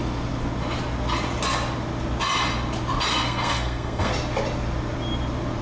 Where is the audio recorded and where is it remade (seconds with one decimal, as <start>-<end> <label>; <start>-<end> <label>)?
0.0-3.1 recorded; 3.1-4.1 remade; 4.1-5.6 recorded